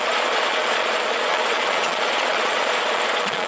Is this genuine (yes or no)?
no